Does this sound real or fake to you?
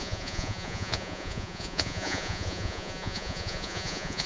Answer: fake